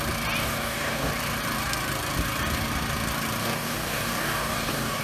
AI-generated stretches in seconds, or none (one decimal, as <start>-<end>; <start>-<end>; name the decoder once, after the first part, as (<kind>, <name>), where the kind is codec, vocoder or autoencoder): 0.4-1.1 (codec, DAC); 3.4-5.0